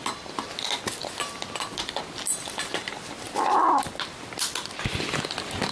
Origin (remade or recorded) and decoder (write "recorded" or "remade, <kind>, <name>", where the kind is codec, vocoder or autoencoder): recorded